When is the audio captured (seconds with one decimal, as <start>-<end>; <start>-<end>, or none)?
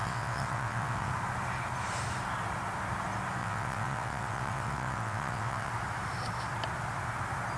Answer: 1.1-3.4; 5.7-7.6